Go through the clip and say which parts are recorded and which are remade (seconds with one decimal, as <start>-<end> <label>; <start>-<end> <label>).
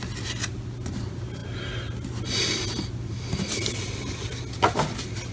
0.0-5.3 recorded